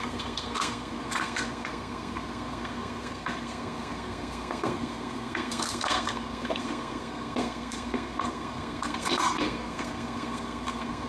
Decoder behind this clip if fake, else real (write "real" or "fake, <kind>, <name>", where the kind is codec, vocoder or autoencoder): fake, codec, SNAC